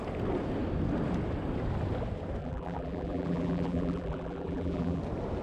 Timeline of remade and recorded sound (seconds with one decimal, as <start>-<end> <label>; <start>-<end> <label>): 0.0-2.4 recorded; 2.4-5.0 remade; 5.0-5.4 recorded